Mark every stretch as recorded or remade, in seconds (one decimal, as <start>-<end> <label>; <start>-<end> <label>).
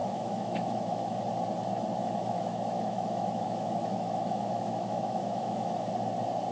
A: 0.0-1.2 remade; 1.2-2.0 recorded; 2.0-5.9 remade; 5.9-6.5 recorded